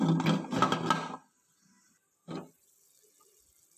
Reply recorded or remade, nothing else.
recorded